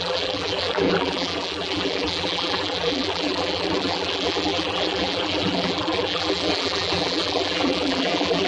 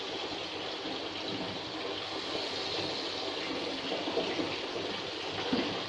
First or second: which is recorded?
second